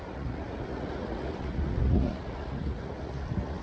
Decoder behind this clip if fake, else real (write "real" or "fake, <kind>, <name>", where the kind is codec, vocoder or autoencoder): fake, vocoder, Vocos